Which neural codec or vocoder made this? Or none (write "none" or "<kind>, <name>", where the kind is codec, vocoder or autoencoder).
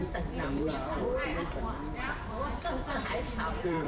vocoder, BigVGAN v2